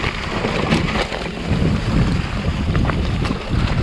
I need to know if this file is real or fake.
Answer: real